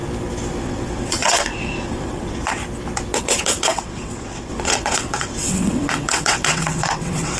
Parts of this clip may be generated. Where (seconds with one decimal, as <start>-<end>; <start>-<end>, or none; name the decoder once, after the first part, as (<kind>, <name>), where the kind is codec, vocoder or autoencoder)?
0.6-2.6 (vocoder, WaveNeXt); 3.2-7.4